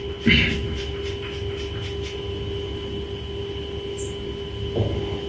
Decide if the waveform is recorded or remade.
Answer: recorded